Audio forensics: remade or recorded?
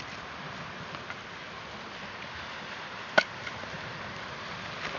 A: recorded